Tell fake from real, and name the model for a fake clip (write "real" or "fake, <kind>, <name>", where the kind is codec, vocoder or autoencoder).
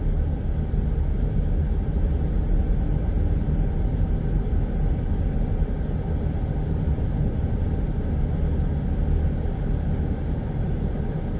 real